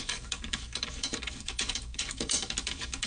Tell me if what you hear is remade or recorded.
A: remade